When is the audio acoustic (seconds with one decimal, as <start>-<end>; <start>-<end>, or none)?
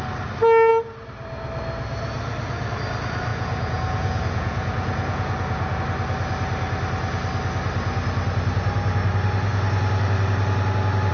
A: 0.0-3.3; 5.8-11.1